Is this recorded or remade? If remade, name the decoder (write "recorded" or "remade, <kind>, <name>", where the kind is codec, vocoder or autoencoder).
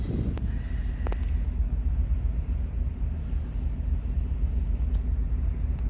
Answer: recorded